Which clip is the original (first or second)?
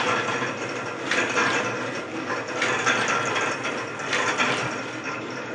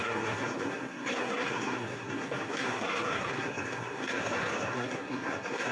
first